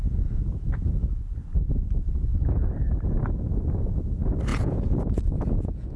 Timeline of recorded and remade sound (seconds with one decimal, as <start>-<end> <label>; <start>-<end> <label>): 0.0-1.1 remade; 1.1-4.5 recorded; 4.5-6.0 remade